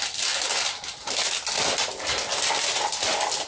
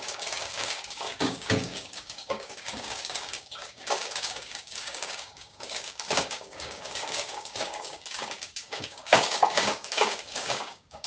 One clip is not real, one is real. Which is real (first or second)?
first